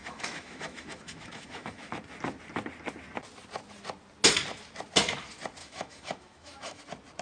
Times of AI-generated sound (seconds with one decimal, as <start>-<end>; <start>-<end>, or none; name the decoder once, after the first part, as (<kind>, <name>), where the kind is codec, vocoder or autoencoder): 0.0-1.9 (autoencoder, DAC-VAE); 5.6-6.8